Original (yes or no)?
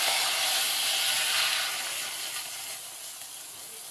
yes